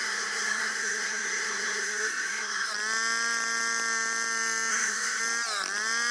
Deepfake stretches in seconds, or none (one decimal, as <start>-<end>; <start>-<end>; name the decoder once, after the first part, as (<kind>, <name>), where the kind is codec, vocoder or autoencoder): 0.0-2.7 (codec, SNAC); 4.7-5.2